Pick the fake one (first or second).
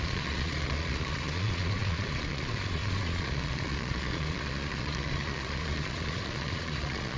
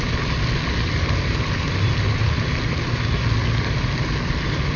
first